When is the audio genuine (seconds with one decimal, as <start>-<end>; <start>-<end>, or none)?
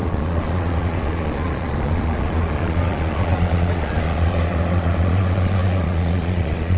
none